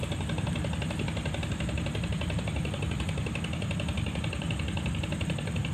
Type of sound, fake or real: real